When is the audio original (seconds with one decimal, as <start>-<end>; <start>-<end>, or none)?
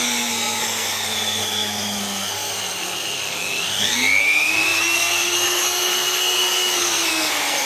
none